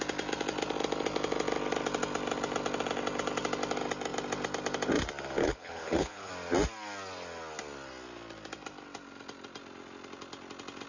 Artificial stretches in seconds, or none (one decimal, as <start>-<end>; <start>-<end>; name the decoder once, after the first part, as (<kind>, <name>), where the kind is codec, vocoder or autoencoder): 5.4-6.3 (codec, HILCodec)